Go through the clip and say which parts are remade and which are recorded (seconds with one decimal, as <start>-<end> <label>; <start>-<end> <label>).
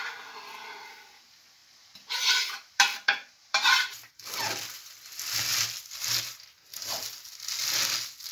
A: 0.0-1.6 recorded; 1.6-4.1 remade; 4.1-6.7 recorded; 6.7-7.3 remade; 7.3-8.3 recorded